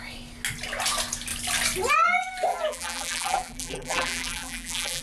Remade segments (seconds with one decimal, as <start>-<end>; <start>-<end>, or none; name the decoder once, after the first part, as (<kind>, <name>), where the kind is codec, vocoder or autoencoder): 2.5-5.0 (vocoder, BigVGAN v2)